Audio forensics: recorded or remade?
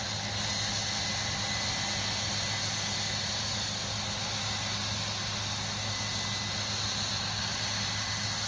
recorded